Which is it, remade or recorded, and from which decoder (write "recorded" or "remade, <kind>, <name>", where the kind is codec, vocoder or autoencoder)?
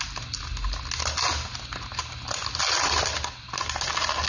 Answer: recorded